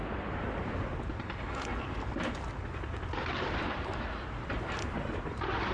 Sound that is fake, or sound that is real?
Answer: real